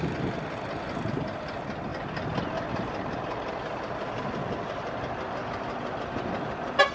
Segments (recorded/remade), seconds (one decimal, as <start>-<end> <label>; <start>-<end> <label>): 0.0-6.9 recorded